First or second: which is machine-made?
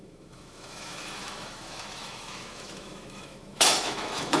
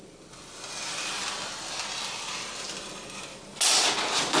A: first